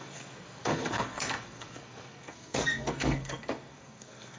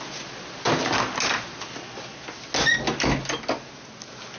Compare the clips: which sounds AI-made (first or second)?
first